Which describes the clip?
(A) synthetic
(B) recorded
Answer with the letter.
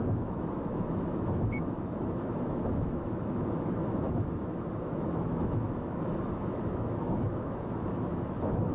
A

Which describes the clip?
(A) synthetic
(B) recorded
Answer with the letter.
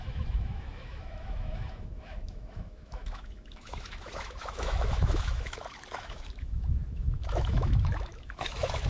A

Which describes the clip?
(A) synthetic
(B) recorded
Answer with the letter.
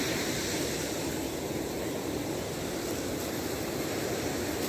B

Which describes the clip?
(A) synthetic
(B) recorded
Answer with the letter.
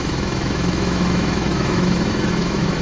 A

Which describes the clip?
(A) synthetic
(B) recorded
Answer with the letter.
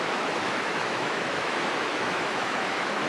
A